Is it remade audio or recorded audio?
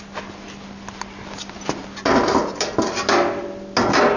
recorded